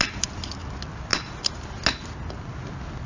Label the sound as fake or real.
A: real